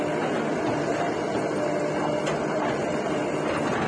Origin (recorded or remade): recorded